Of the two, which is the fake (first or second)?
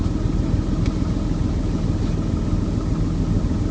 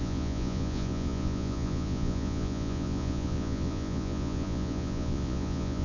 second